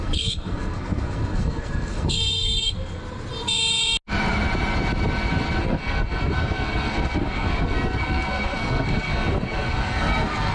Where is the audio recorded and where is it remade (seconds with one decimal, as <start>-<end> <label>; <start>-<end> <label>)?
0.0-3.0 remade; 3.0-5.6 recorded; 5.6-10.5 remade